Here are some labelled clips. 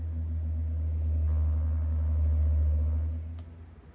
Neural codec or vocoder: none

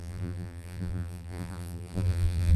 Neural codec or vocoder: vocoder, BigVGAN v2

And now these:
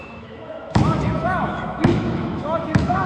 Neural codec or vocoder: autoencoder, DAC-VAE